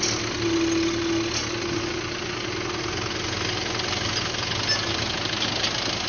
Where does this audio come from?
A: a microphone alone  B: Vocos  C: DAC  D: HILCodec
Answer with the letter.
A